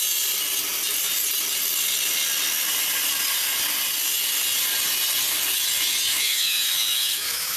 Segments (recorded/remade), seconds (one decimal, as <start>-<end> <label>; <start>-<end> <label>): 0.0-6.1 recorded; 6.1-7.6 remade